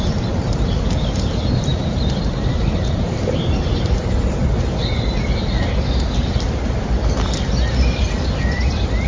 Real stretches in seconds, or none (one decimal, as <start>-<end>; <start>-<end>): 0.0-1.7; 4.8-9.1